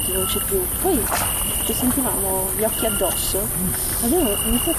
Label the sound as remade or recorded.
recorded